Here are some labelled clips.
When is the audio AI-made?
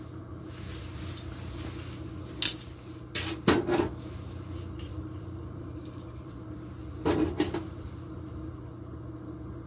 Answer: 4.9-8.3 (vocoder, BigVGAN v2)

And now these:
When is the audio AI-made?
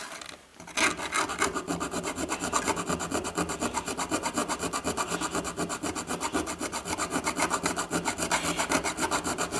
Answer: none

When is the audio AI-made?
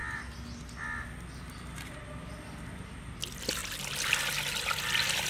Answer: none